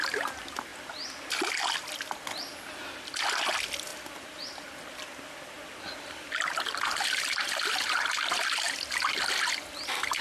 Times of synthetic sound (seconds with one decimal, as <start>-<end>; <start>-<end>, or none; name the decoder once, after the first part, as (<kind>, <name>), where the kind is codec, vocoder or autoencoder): none